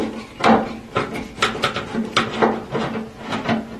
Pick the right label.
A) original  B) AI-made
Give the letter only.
A